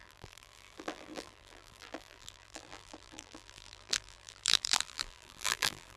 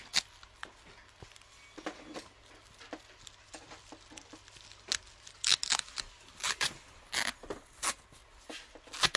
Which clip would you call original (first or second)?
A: second